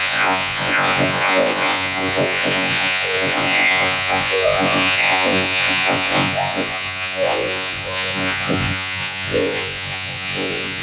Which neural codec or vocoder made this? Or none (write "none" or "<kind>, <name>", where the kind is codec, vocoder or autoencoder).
vocoder, Vocos